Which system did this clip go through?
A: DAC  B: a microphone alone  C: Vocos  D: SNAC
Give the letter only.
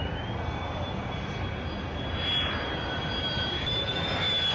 B